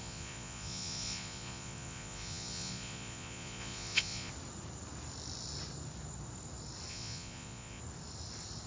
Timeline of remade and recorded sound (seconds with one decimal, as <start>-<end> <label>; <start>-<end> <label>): 0.0-4.3 remade; 4.3-6.9 recorded; 6.9-7.8 remade; 7.8-8.7 recorded